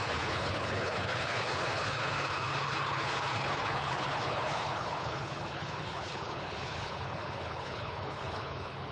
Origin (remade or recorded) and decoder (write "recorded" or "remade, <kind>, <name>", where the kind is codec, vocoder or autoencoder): remade, codec, HILCodec